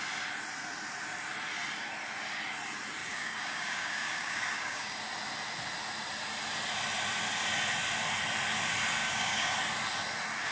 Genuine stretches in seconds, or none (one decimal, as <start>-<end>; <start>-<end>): 0.0-3.0; 5.0-9.0; 9.5-10.5